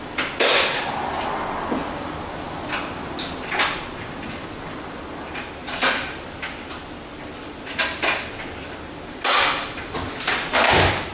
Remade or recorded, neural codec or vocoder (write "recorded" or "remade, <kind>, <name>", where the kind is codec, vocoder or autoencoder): recorded